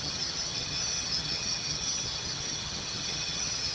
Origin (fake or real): fake